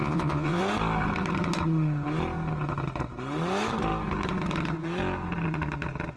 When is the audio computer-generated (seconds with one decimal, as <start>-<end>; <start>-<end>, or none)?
0.0-0.6